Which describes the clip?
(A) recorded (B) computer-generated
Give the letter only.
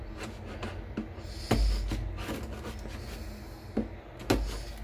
A